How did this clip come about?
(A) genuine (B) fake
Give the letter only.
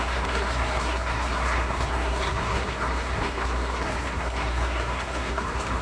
B